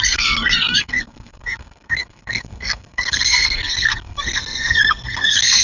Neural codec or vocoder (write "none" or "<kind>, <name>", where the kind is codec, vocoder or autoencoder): codec, SNAC